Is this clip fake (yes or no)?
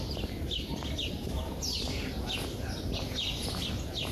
no